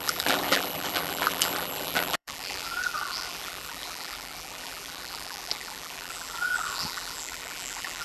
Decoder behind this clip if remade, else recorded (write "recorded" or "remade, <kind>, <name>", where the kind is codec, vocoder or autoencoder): remade, vocoder, BigVGAN v2